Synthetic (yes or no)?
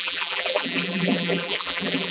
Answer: yes